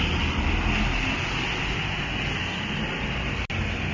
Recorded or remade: recorded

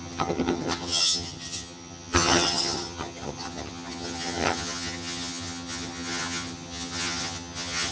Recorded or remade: remade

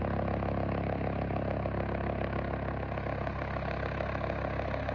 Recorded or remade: recorded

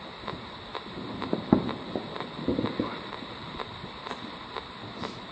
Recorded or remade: recorded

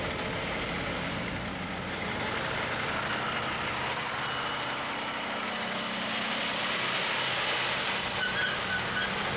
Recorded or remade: recorded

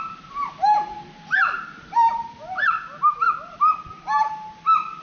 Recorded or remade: recorded